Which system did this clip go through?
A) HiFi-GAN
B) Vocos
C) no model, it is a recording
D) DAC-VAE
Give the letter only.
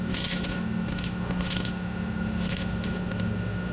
D